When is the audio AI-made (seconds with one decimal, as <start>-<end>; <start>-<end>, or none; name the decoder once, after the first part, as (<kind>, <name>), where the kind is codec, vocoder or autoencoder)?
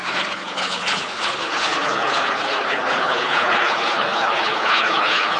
0.0-5.4 (codec, HILCodec)